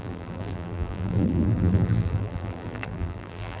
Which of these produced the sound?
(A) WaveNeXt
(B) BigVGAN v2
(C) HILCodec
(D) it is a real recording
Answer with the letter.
B